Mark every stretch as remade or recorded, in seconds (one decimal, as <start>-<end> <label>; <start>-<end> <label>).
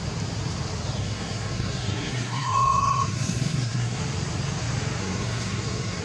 0.0-1.0 recorded; 1.0-4.0 remade; 4.0-5.0 recorded; 5.0-6.0 remade